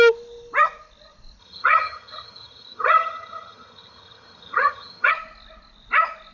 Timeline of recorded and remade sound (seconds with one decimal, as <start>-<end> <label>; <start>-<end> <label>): 0.0-1.4 recorded; 1.4-5.1 remade; 5.1-6.3 recorded